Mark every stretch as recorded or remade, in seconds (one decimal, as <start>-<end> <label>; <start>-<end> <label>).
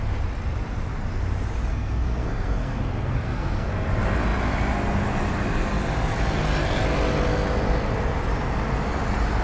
0.0-1.7 recorded; 1.7-3.7 remade; 3.7-9.4 recorded